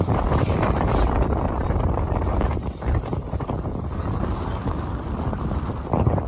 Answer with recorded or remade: remade